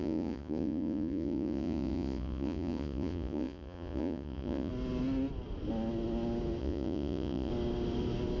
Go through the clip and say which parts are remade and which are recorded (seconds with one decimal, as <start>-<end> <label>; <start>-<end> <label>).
0.0-4.7 remade; 4.7-6.6 recorded; 6.6-7.5 remade; 7.5-8.4 recorded